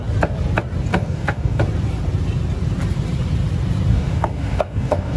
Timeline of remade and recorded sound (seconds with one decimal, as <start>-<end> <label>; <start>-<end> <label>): 0.0-0.9 recorded; 0.9-1.6 remade; 1.6-3.9 recorded; 3.9-5.2 remade